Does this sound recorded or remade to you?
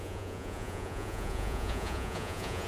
remade